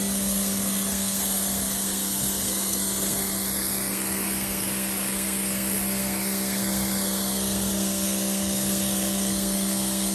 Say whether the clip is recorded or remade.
remade